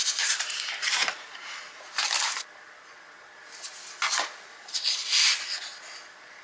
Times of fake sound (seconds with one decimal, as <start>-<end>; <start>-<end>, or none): none